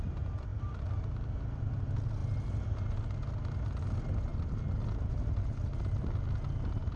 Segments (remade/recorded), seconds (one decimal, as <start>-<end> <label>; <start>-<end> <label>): 0.0-7.0 recorded

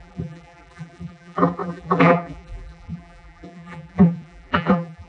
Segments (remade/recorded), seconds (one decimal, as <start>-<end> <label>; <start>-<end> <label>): 0.0-5.1 remade

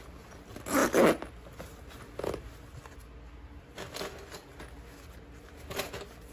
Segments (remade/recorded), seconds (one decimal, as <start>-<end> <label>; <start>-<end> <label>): 0.0-6.3 recorded

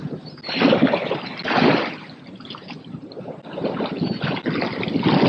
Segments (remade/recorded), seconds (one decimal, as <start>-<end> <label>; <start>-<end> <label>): 0.0-5.3 recorded

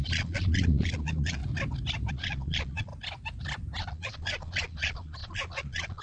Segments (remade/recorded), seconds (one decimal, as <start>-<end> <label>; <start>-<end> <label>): 0.0-1.4 remade; 1.4-2.1 recorded; 2.1-2.9 remade; 2.9-3.8 recorded; 3.8-6.0 remade